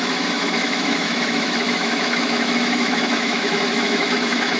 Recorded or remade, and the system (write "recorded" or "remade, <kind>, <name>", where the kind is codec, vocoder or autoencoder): remade, autoencoder, DAC-VAE